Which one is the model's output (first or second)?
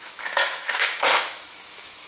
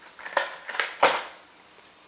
first